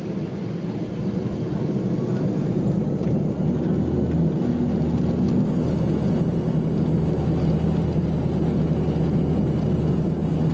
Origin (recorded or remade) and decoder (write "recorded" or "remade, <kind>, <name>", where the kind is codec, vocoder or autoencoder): recorded